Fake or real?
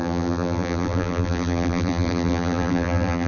fake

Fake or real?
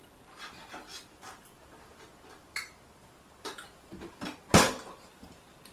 real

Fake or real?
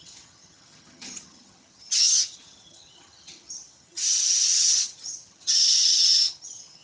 fake